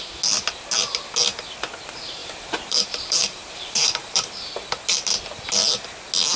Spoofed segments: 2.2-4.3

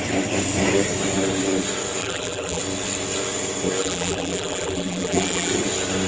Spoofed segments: 2.0-2.6; 3.8-5.5